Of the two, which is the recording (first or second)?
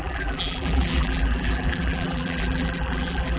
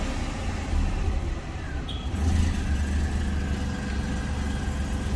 second